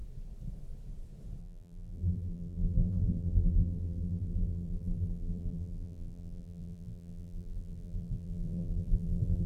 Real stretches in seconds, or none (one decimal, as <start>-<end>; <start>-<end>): 0.0-1.4